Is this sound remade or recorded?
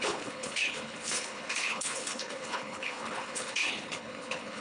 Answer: remade